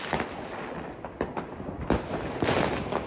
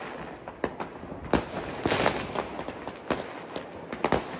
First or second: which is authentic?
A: second